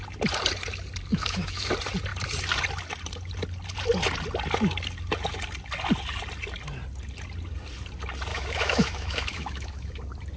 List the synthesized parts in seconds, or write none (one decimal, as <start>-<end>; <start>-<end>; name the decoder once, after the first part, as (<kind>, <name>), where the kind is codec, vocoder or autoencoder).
1.1-1.7 (autoencoder, DAC-VAE); 8.3-10.0